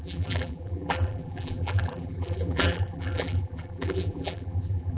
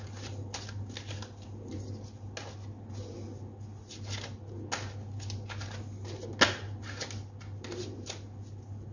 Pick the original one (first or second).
second